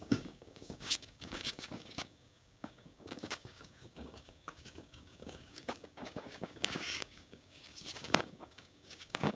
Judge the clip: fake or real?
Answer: fake